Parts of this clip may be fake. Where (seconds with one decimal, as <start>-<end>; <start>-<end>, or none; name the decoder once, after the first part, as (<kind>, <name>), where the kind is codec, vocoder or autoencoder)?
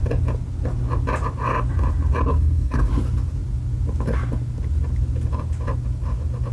2.3-2.9 (codec, SNAC)